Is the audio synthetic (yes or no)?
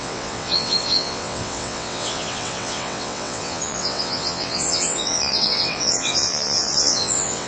yes